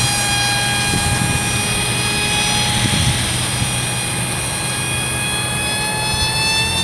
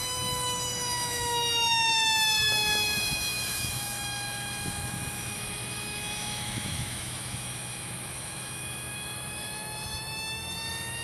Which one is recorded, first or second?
first